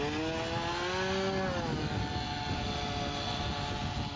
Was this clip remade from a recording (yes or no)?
no